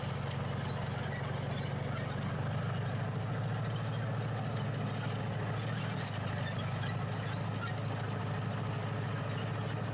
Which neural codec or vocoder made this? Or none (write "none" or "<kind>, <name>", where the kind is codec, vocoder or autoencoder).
none